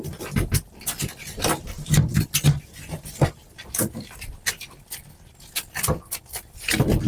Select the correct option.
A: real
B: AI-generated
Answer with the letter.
A